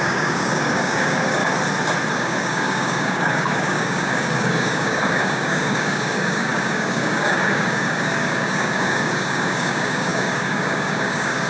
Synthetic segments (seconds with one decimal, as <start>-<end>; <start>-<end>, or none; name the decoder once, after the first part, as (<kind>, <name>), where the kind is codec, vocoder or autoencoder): 0.0-1.4 (codec, DAC); 2.1-11.5